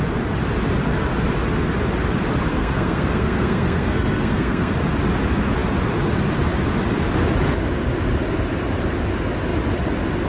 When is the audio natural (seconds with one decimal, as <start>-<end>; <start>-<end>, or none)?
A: 0.0-2.5; 4.7-10.3